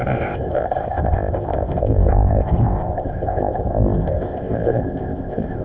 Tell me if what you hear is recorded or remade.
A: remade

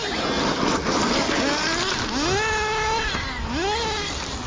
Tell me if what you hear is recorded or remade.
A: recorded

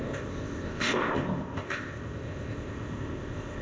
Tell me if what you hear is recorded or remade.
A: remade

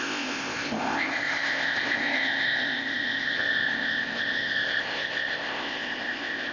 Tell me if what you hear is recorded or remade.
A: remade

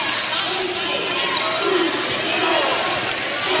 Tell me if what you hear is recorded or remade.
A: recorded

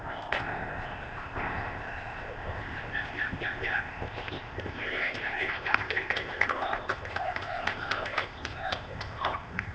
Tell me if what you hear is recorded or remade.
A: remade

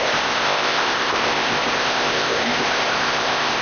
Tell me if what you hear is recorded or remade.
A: remade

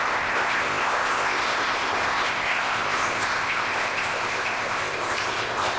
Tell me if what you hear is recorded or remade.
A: remade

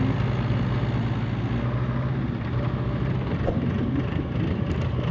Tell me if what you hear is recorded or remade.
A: recorded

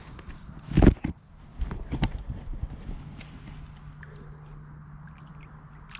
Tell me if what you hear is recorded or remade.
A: recorded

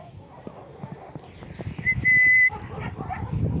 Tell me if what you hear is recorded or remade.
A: recorded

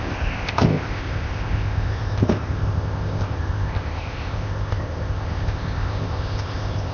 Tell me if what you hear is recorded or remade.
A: remade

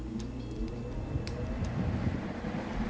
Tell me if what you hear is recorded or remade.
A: recorded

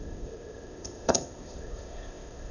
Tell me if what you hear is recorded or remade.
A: remade